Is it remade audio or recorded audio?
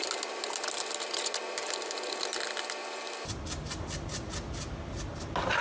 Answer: recorded